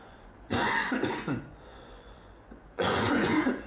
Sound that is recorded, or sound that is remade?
remade